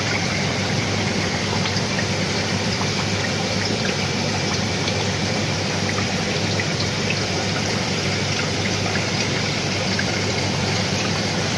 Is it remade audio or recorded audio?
remade